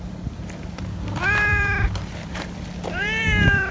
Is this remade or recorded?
remade